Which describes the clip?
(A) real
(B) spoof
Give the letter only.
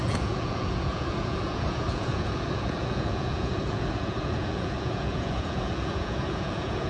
B